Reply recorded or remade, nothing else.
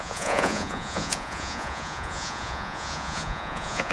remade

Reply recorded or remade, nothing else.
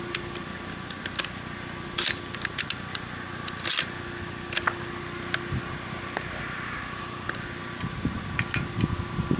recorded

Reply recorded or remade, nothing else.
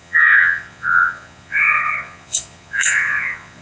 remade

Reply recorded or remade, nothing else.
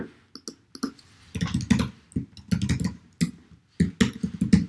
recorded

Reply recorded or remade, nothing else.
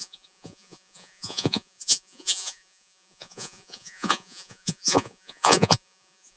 remade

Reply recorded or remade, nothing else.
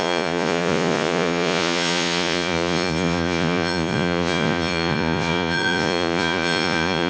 remade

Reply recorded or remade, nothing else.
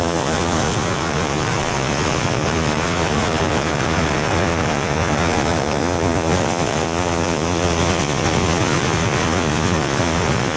remade